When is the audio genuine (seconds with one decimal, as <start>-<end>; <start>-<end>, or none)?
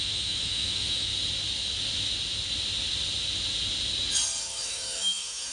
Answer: 1.1-4.4